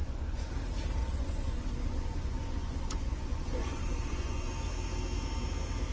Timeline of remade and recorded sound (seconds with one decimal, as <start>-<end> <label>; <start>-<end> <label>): 0.0-0.5 remade; 0.5-1.0 recorded; 1.0-4.5 remade; 4.5-5.9 recorded